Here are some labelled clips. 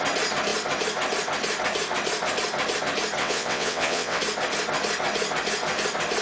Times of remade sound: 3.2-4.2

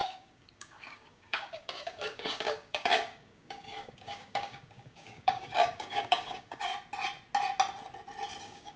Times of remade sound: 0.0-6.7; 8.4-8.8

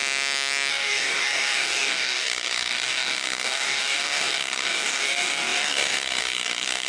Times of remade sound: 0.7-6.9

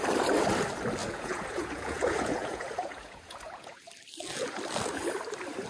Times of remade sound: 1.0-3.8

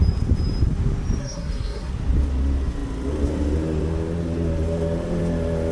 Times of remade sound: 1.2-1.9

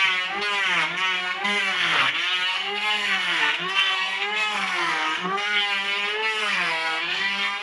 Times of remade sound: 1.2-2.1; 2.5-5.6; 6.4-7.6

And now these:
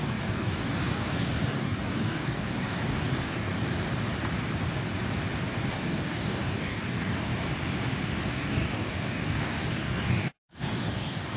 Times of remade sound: 0.0-3.5; 5.7-7.3; 8.2-11.4

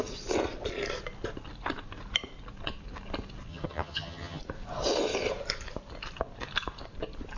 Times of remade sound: 3.5-4.4